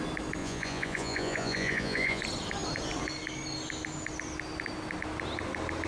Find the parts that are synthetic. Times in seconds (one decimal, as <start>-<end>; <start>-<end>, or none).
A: 0.4-2.2